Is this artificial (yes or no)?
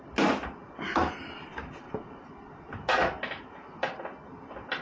no